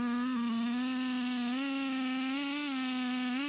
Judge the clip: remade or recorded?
recorded